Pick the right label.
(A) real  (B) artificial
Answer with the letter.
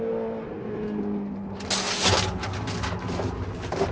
A